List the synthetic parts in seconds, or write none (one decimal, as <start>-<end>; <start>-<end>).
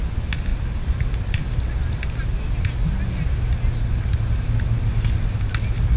none